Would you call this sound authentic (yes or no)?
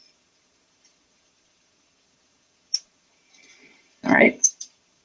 no